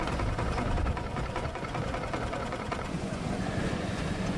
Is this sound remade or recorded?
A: remade